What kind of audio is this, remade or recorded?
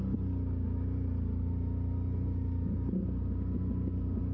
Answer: recorded